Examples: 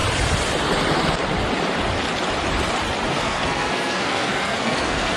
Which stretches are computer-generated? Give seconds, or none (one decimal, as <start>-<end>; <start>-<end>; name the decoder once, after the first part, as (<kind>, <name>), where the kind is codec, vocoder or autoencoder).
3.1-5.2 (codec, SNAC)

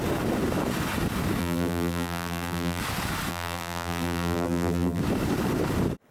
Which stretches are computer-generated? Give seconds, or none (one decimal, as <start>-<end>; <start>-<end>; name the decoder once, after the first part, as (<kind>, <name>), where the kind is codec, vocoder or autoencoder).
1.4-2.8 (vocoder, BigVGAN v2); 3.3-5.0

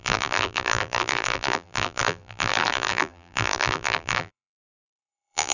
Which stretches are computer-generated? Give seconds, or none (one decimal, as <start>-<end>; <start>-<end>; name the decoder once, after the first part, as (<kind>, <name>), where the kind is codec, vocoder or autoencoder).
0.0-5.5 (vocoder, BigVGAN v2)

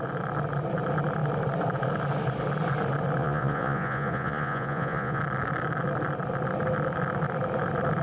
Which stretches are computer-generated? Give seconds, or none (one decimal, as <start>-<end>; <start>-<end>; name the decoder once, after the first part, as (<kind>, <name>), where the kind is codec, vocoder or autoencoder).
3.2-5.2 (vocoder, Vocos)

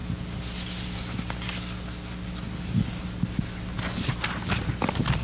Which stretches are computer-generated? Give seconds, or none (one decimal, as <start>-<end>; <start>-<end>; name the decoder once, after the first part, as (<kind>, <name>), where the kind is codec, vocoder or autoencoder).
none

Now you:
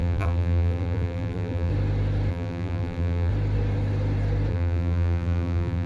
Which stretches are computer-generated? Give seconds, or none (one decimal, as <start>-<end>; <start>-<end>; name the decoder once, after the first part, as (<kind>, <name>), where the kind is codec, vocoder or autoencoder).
0.0-1.7 (vocoder, BigVGAN v2); 2.3-3.3; 4.5-5.9